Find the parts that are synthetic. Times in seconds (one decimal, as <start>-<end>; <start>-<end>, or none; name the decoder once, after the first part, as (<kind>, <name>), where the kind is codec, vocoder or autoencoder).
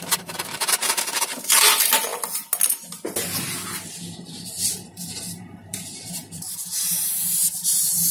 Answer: 0.0-2.1 (vocoder, BigVGAN v2); 4.5-6.8; 7.6-8.1